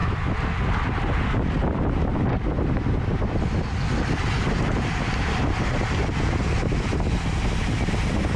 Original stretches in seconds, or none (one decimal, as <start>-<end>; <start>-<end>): 0.0-8.4